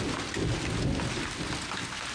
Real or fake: real